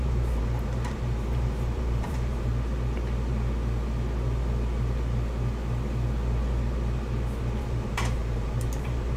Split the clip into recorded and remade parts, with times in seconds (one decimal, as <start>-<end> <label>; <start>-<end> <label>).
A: 0.0-2.5 remade; 2.5-7.6 recorded; 7.6-9.2 remade